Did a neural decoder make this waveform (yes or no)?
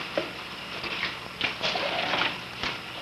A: no